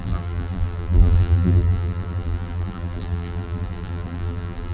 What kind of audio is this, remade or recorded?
remade